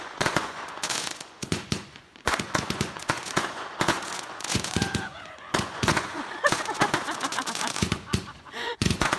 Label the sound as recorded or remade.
remade